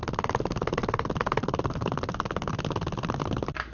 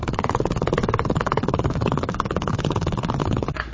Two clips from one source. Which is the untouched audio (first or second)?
first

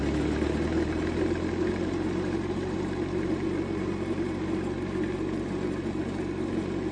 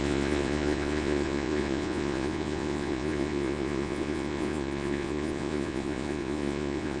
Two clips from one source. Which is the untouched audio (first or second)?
first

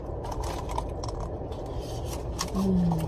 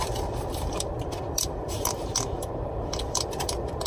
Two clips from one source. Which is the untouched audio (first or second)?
first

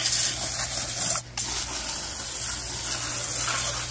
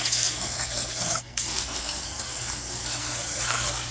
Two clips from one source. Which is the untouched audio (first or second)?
first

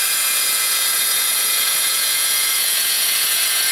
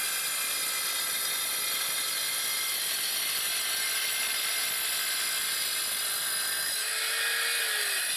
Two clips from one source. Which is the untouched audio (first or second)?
second